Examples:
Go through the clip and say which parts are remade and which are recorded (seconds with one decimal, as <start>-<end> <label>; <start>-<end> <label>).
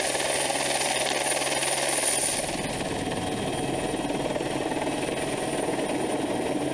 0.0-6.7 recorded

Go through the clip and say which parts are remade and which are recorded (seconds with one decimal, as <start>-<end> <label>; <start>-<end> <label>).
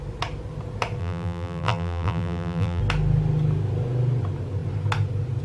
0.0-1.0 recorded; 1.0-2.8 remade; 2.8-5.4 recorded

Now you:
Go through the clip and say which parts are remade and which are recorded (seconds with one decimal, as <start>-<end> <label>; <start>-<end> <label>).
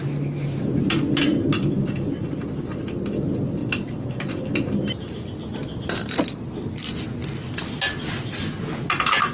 0.0-1.3 recorded; 1.3-2.8 remade; 2.8-5.6 recorded; 5.6-6.2 remade; 6.2-9.3 recorded